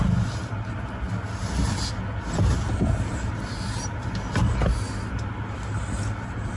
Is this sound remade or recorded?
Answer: recorded